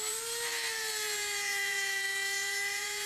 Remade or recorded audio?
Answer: remade